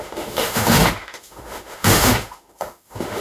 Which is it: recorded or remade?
remade